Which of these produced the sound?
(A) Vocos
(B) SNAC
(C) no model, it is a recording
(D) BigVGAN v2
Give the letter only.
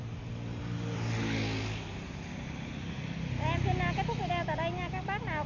C